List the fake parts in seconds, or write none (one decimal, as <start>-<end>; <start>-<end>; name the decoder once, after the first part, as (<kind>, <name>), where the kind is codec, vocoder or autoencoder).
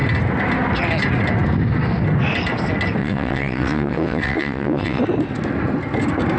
3.0-5.0 (vocoder, WaveNeXt)